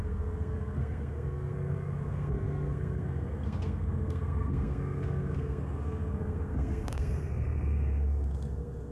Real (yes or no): no